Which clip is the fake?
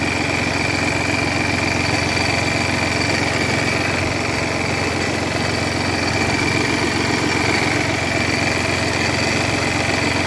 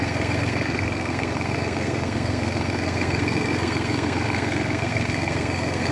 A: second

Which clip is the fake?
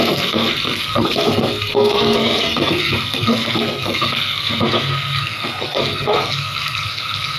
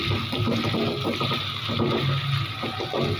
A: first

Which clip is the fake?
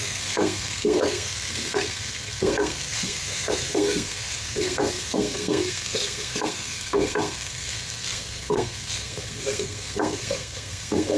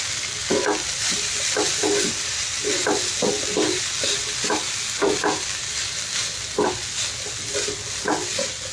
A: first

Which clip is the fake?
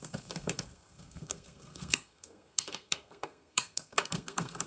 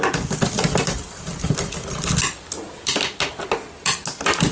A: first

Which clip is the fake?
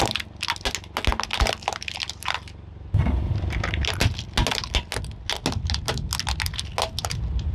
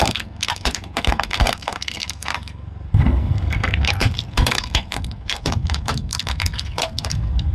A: second